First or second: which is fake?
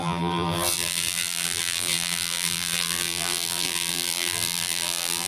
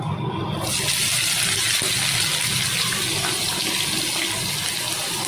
first